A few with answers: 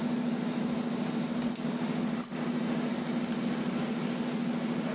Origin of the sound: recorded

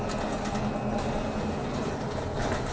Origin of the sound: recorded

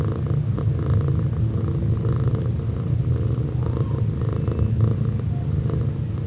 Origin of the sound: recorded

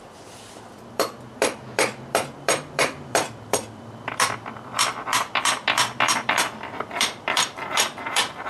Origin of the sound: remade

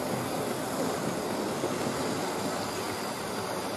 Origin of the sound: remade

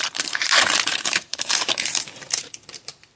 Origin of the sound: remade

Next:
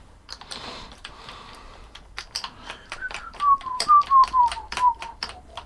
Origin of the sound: remade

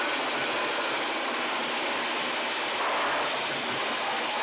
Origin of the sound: recorded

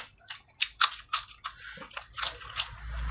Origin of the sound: recorded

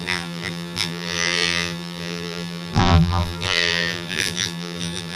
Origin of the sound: remade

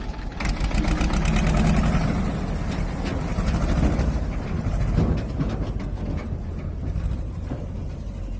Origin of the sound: recorded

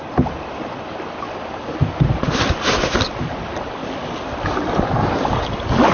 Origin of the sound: recorded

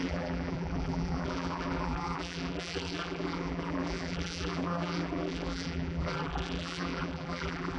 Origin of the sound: remade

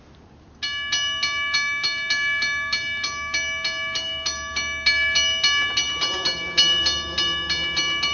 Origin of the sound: recorded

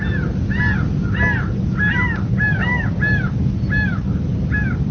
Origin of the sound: recorded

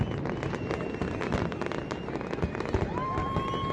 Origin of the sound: recorded